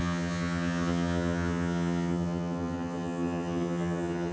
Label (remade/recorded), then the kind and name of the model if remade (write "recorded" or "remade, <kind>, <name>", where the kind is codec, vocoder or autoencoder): remade, vocoder, HiFi-GAN